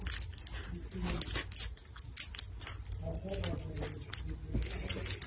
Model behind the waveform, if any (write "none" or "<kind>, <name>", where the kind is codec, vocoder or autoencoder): none